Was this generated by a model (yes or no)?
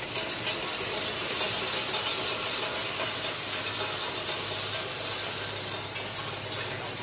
no